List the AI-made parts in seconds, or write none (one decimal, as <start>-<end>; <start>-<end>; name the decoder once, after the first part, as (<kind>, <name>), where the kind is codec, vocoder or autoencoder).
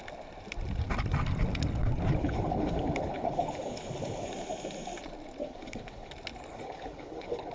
2.2-4.3 (codec, HILCodec); 5.4-6.1; 6.5-7.5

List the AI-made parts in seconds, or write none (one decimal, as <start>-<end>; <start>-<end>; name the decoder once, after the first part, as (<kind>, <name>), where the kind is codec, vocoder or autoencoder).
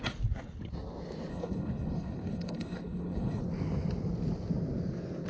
1.3-3.4 (codec, HILCodec)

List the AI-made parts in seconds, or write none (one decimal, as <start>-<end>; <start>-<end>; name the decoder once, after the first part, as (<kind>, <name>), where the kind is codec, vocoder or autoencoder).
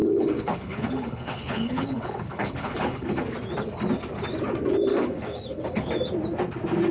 0.0-3.2 (codec, HILCodec); 4.9-5.9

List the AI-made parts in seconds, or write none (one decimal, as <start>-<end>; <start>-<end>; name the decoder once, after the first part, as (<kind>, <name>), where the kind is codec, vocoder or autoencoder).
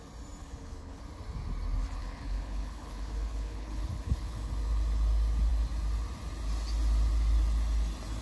0.4-1.0 (codec, HILCodec); 2.0-4.5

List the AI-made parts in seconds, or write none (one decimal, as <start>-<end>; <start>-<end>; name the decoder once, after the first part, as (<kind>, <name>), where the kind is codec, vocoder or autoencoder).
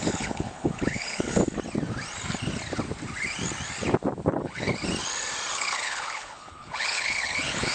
0.0-1.4 (codec, HILCodec); 4.3-4.8; 5.5-7.7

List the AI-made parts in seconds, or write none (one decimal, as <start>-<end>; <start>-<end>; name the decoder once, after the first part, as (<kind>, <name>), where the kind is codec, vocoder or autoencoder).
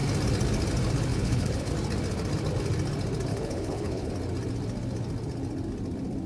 1.1-1.7 (codec, HILCodec); 3.3-4.1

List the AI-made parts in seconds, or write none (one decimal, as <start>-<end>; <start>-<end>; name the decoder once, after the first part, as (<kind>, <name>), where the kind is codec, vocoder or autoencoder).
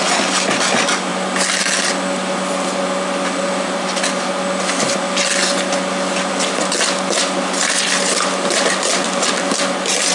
none